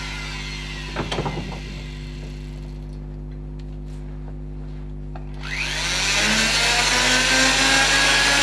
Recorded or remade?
recorded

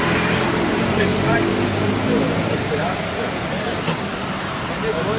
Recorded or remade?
recorded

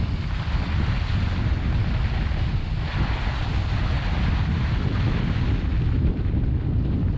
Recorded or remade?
recorded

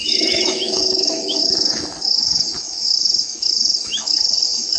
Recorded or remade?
remade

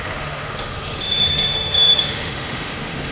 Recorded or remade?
remade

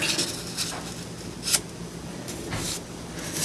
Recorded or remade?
recorded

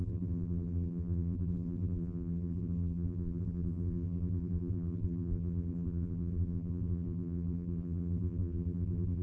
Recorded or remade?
remade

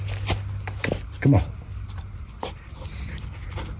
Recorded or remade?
recorded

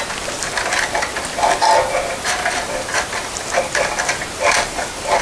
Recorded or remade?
recorded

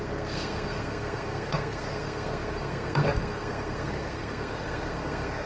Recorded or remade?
remade